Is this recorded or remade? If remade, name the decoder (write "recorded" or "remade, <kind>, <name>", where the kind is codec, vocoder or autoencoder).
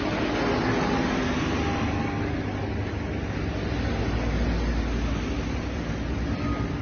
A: recorded